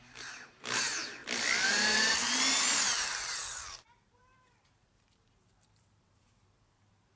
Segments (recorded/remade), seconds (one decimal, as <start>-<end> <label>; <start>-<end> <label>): 0.0-1.2 remade; 1.2-1.7 recorded; 1.7-2.2 remade; 2.2-2.9 recorded; 2.9-7.2 remade